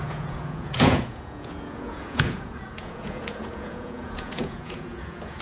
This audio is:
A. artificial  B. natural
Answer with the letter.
A